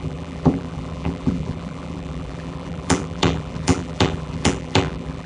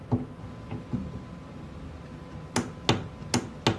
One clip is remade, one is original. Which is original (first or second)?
second